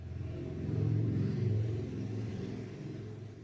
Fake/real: fake